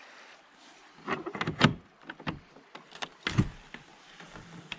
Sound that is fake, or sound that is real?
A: real